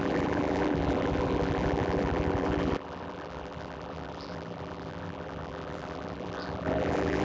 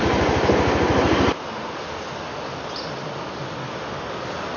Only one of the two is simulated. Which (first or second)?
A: first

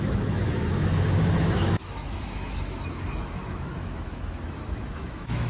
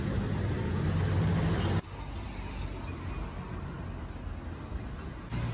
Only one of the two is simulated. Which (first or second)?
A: first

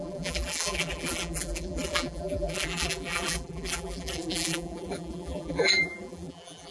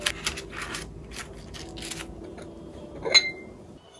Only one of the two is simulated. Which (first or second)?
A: first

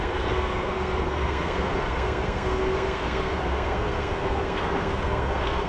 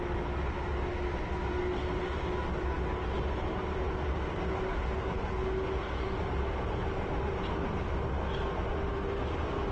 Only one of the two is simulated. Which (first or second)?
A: first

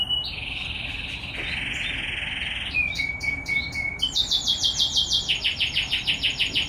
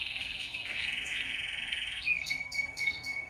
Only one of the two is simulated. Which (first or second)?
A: second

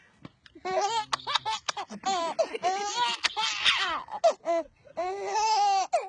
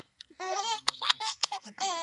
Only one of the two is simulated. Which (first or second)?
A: second